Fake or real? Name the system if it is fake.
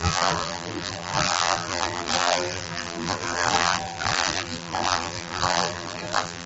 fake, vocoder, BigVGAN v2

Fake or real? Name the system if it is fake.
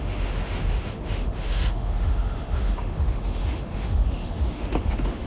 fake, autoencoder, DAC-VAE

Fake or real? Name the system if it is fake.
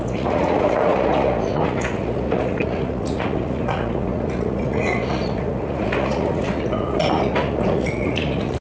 fake, vocoder, Vocos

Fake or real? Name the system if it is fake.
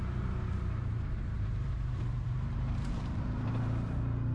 fake, vocoder, BigVGAN v2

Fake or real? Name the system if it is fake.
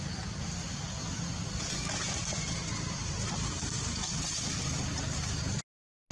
real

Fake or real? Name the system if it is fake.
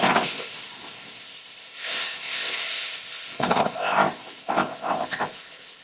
fake, codec, ZipCodec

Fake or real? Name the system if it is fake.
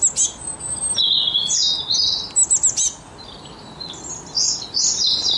real